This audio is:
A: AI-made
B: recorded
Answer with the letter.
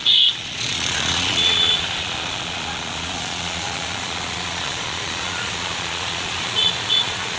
A